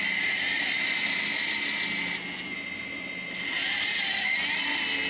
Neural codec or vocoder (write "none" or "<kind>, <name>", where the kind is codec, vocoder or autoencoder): none